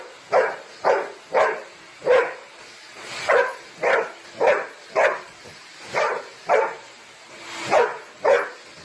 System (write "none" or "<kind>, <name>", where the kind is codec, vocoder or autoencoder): vocoder, BigVGAN v2